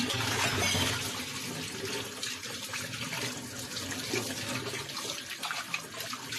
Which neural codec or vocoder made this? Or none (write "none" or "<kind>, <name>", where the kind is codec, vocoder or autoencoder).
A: none